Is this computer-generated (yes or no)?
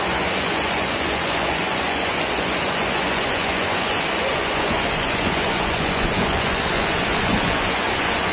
yes